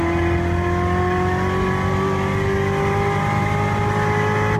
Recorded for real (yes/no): yes